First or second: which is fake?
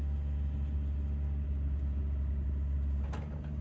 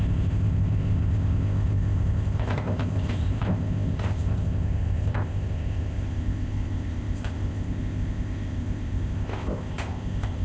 second